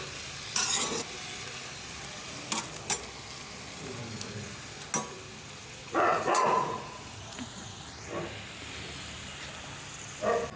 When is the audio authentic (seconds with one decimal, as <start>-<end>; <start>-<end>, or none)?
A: 0.0-5.8; 7.8-10.6